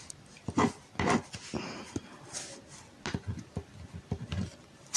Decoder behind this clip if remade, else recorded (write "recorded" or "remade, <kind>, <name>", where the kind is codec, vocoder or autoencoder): recorded